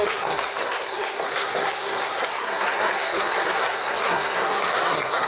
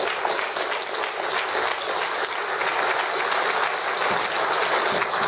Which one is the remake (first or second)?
first